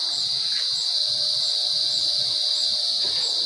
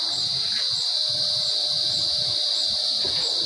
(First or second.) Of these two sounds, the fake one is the second